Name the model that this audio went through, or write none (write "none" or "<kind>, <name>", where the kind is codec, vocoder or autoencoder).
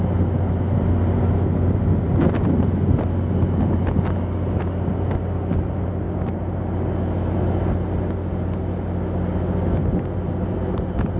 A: none